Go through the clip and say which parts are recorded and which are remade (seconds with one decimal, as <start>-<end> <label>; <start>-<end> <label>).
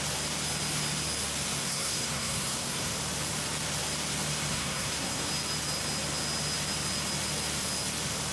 0.0-1.6 recorded; 1.6-2.9 remade; 2.9-4.5 recorded; 4.5-5.3 remade; 5.3-8.3 recorded